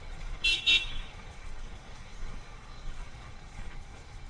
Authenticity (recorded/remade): remade